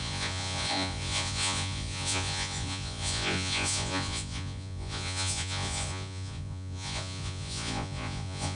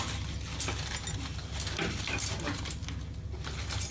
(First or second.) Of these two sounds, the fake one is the first